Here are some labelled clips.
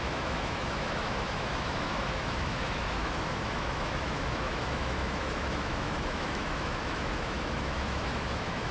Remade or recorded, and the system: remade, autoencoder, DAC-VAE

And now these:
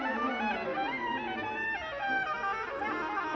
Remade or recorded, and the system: recorded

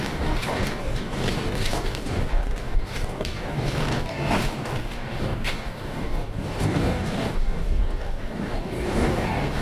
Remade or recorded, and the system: remade, codec, DAC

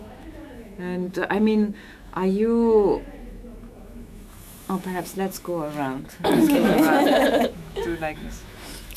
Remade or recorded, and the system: remade, autoencoder, DAC-VAE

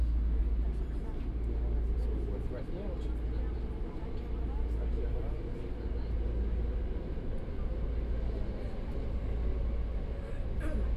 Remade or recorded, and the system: recorded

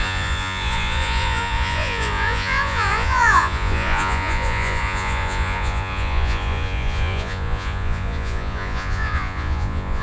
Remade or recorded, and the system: remade, vocoder, Vocos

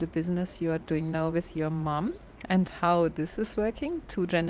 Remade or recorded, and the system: remade, vocoder, Vocos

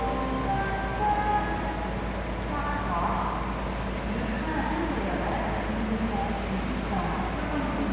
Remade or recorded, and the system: recorded